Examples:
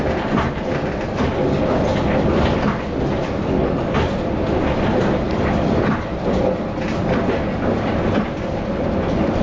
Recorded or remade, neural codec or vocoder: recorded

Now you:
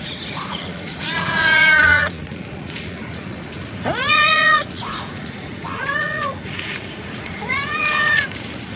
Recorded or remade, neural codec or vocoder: remade, vocoder, Vocos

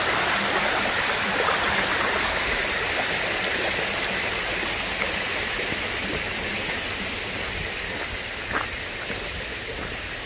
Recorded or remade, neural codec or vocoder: recorded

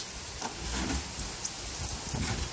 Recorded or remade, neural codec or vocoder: recorded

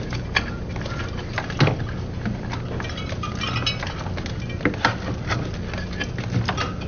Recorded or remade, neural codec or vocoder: recorded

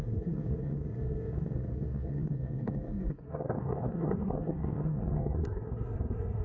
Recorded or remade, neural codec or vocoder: remade, codec, SNAC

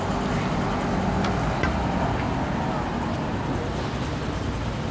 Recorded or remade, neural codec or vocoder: recorded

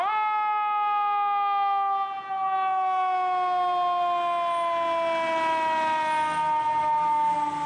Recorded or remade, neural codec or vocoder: recorded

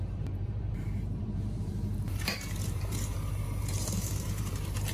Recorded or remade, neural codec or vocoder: remade, vocoder, BigVGAN v2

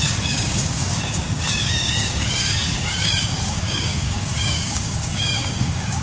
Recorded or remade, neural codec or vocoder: remade, codec, DAC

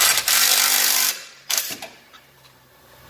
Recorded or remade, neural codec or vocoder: remade, vocoder, BigVGAN v2